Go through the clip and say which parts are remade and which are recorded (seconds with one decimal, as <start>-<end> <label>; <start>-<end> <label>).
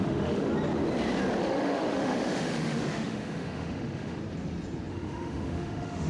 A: 0.0-0.5 remade; 0.5-1.4 recorded; 1.4-4.2 remade; 4.2-4.9 recorded; 4.9-6.1 remade